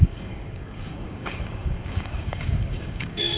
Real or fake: fake